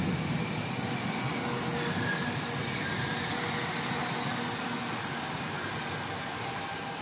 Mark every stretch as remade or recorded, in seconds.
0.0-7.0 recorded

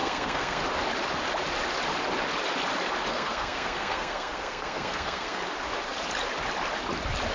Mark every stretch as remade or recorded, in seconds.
0.0-0.6 remade; 0.6-3.1 recorded; 3.1-5.4 remade; 5.4-7.3 recorded

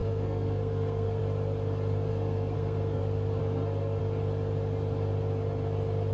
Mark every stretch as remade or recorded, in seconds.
0.0-1.2 remade; 1.2-2.1 recorded; 2.1-3.0 remade; 3.0-3.4 recorded; 3.4-4.0 remade; 4.0-6.1 recorded

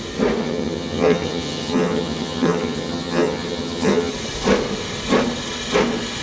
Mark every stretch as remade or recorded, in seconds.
0.0-0.4 recorded; 0.4-4.1 remade; 4.1-6.2 recorded

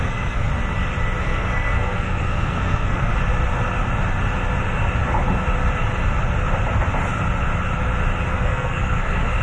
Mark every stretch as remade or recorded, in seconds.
0.0-0.5 remade; 0.5-1.2 recorded; 1.2-3.1 remade; 3.1-8.3 recorded; 8.3-9.4 remade